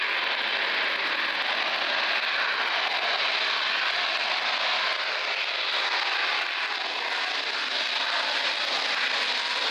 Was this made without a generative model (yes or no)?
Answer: yes